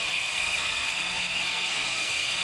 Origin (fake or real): fake